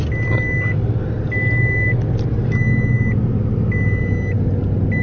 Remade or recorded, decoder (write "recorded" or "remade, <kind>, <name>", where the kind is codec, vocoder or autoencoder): recorded